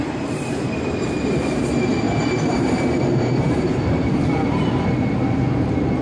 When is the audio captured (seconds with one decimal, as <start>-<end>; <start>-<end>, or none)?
none